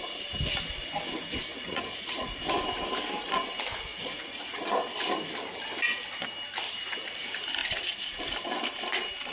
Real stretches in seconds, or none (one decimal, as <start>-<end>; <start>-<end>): 0.0-1.5; 2.4-3.9; 4.6-7.6; 8.2-9.3

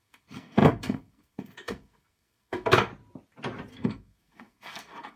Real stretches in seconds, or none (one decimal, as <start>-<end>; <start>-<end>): 2.9-3.7

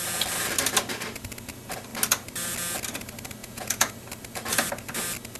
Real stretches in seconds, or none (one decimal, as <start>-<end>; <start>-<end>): 0.0-3.4; 3.9-5.4

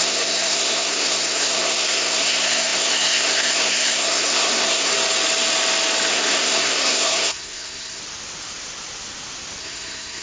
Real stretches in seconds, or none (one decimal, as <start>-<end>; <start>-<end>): 4.9-6.1; 8.0-9.6

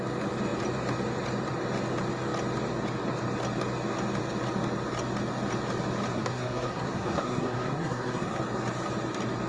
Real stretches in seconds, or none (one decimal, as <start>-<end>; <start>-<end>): 0.0-6.1; 8.4-9.5

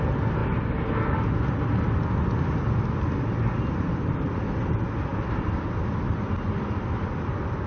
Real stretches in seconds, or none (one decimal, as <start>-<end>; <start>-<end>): 0.0-7.7